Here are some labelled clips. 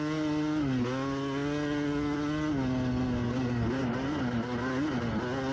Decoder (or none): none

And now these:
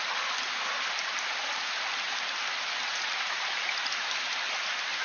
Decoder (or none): none